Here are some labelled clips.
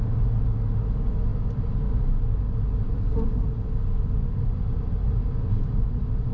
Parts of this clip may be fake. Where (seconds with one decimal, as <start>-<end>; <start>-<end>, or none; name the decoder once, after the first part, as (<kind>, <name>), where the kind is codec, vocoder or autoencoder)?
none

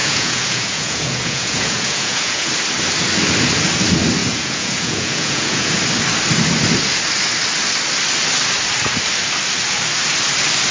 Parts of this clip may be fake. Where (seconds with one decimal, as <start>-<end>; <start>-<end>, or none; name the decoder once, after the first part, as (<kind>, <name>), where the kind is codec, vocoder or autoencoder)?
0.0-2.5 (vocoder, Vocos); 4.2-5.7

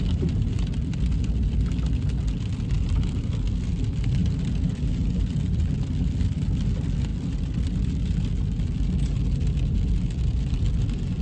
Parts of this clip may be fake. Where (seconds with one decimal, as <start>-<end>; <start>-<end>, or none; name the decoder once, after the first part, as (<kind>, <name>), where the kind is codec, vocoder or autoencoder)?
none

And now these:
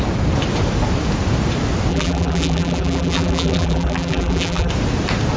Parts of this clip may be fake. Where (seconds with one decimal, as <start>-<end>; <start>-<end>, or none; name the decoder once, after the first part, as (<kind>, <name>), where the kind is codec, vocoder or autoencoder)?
1.9-4.7 (vocoder, BigVGAN v2)

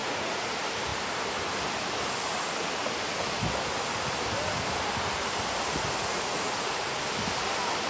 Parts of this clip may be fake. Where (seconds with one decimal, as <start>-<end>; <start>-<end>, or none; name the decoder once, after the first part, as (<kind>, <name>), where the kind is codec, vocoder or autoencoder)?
0.0-0.5 (vocoder, Vocos); 6.0-7.0